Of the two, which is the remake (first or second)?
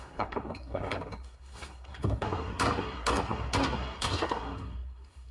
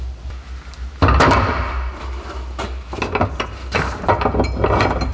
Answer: first